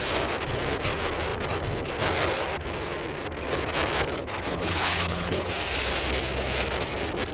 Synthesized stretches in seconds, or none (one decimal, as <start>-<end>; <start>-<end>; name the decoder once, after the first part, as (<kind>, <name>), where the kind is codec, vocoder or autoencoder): 4.0-5.5 (codec, HILCodec)